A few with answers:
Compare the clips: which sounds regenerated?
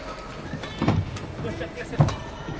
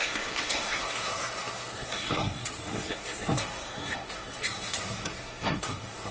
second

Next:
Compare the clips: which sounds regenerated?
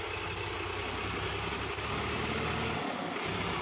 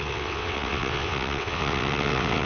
second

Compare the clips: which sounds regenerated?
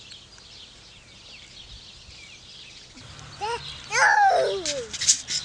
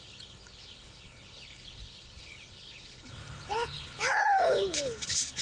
second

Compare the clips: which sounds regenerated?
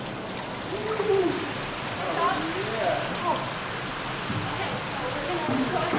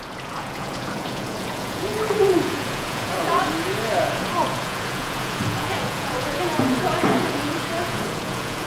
second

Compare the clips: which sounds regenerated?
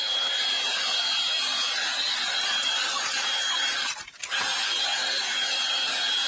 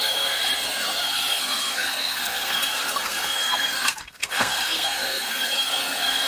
second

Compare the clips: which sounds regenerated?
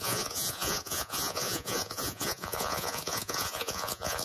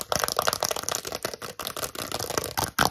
first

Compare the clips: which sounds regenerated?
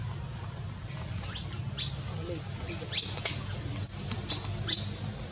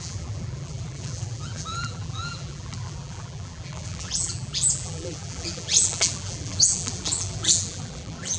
second